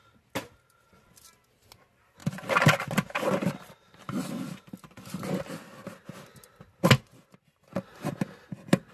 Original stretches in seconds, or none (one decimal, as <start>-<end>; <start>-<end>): 0.0-8.9